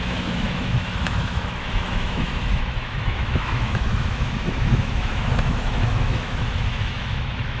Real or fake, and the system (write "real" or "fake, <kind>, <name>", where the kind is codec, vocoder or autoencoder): fake, autoencoder, DAC-VAE